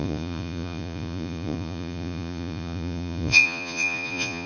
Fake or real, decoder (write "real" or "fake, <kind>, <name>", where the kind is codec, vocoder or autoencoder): fake, vocoder, Vocos